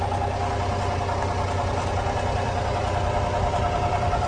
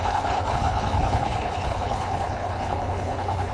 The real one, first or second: first